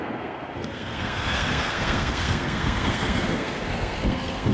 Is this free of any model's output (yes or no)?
no